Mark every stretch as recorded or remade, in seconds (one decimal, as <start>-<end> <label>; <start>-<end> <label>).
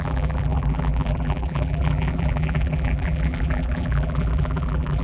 0.0-5.0 remade